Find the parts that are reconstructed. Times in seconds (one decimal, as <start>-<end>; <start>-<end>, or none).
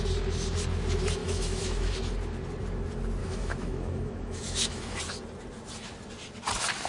1.2-1.9; 3.2-5.0